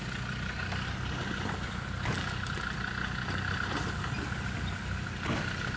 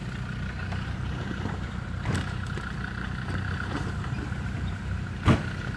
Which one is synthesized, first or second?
second